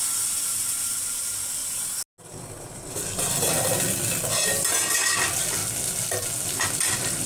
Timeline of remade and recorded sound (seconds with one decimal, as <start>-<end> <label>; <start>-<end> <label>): 0.0-7.3 recorded